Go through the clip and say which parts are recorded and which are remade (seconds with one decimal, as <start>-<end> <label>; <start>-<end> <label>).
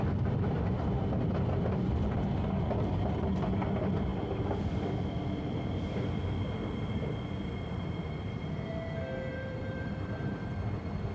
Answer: 0.0-9.3 recorded; 9.3-10.4 remade; 10.4-11.1 recorded